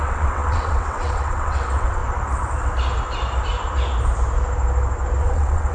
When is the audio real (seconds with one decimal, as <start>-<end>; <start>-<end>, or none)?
2.0-5.2